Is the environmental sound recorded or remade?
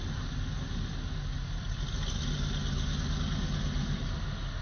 recorded